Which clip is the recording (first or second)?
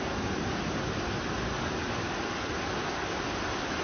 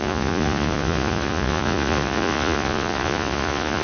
first